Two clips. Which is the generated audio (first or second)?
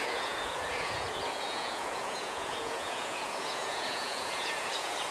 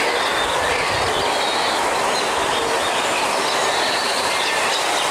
first